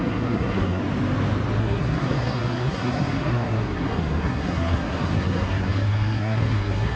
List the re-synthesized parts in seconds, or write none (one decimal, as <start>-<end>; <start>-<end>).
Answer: 0.0-0.8; 1.6-7.0